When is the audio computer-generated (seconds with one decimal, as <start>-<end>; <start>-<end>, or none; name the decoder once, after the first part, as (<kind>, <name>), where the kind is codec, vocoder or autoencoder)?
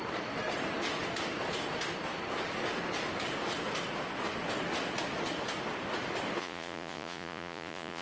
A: 6.4-8.0 (vocoder, Vocos)